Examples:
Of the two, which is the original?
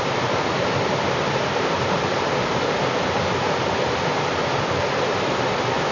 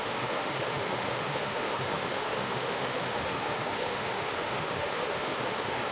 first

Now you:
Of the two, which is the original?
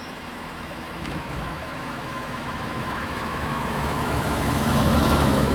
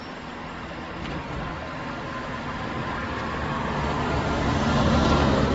second